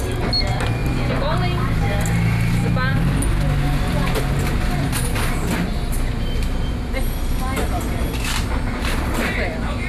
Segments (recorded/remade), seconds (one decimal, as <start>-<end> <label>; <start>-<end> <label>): 0.0-9.9 recorded